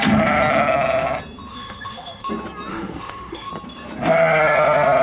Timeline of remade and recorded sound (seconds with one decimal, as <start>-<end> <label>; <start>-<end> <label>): 0.0-1.5 recorded; 1.5-2.3 remade; 2.3-2.7 recorded; 2.7-3.5 remade; 3.5-5.0 recorded